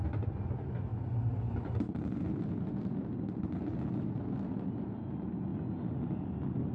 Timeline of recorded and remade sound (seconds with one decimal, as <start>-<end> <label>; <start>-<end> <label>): 0.0-6.7 recorded